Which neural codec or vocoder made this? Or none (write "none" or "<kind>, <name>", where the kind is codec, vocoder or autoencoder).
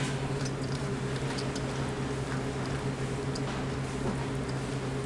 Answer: none